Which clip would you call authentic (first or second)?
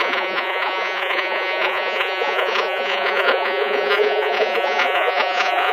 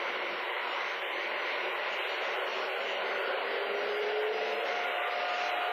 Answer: second